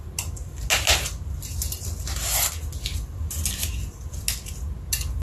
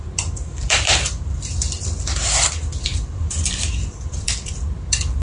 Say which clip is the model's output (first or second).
second